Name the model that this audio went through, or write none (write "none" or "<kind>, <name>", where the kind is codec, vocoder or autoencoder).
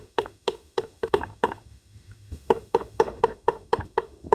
autoencoder, DAC-VAE